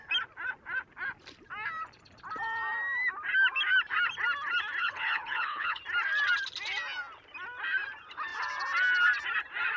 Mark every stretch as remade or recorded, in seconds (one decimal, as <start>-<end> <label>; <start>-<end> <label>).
0.0-4.8 recorded; 4.8-5.8 remade; 5.8-9.8 recorded